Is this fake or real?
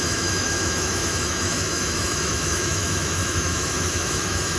fake